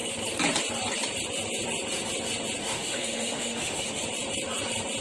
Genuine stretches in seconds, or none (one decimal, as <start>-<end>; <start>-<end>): 0.0-2.6; 4.0-5.0